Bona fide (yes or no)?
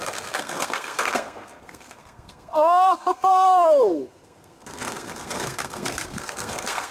no